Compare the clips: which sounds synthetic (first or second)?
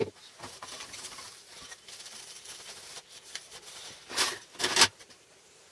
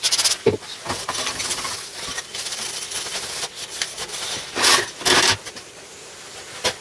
first